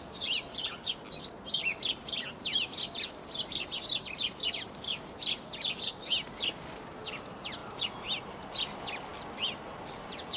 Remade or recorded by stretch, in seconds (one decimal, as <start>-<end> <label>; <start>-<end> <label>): 0.0-10.4 recorded